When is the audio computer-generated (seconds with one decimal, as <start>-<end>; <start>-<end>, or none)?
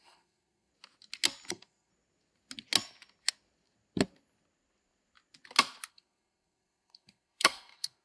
0.0-0.7; 1.5-1.9; 5.9-8.0